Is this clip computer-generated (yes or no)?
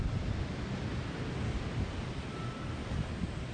no